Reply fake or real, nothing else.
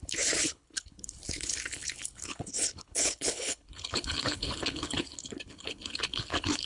fake